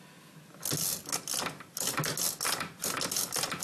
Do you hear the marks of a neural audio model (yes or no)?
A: no